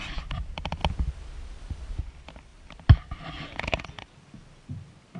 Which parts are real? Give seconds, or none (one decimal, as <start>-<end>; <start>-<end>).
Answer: 0.8-2.0; 2.5-4.2